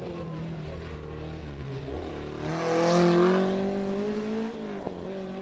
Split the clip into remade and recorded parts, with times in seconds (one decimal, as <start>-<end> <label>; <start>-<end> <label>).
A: 0.0-1.4 recorded; 1.4-2.1 remade; 2.1-5.4 recorded